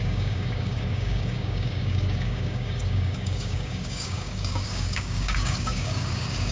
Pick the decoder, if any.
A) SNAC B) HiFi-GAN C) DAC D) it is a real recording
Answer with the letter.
C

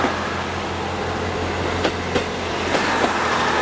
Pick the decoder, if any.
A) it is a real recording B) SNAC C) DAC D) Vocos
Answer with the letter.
A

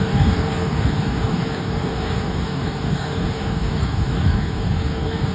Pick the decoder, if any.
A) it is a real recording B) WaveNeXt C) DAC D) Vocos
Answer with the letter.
C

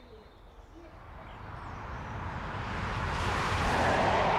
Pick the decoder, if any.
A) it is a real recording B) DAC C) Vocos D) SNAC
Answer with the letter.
A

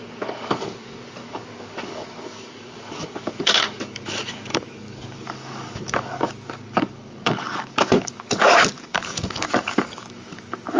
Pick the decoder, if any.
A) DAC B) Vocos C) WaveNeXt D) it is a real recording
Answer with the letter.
A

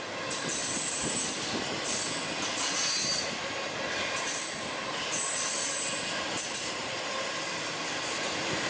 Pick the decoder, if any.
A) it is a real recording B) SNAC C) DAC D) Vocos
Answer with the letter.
A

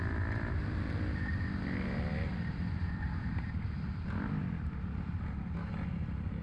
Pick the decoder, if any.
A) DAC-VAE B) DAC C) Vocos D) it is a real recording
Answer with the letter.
D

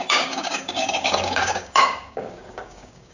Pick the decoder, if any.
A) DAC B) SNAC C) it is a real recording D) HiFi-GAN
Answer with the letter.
A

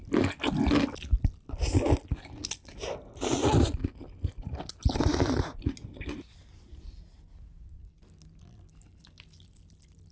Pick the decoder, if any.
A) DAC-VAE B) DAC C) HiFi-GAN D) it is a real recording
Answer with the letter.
D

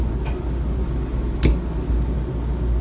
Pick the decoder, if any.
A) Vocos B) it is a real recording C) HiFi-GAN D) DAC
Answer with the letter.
B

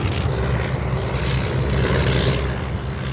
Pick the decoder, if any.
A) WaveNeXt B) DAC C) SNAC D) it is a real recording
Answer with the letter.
D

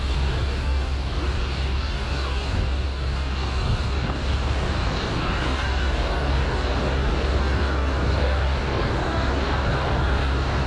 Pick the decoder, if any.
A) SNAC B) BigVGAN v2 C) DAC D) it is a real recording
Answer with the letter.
C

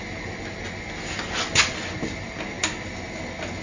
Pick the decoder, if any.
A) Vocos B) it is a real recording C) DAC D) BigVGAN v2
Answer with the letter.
B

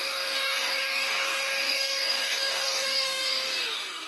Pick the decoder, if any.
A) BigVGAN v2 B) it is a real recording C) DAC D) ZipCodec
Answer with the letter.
C